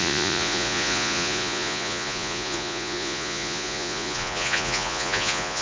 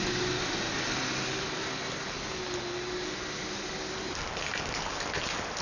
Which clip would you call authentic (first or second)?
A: second